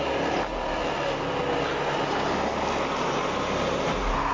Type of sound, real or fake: real